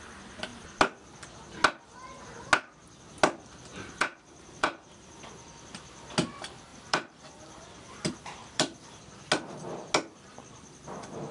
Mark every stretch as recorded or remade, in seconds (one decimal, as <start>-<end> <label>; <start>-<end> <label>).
0.0-3.7 recorded; 3.7-5.2 remade; 5.2-6.7 recorded; 6.7-9.0 remade; 9.0-11.3 recorded